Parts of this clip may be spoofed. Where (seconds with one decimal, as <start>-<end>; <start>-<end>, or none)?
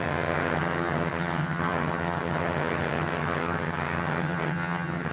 0.0-5.1